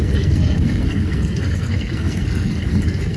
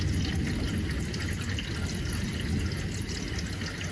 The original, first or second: second